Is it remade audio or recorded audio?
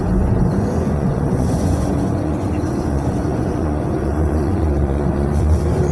remade